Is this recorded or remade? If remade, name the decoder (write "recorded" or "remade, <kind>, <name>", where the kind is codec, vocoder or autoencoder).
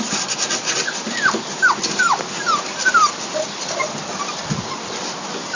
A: recorded